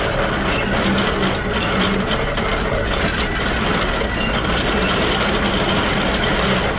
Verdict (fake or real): real